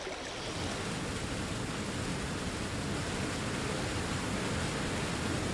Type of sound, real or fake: real